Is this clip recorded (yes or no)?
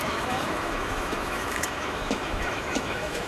no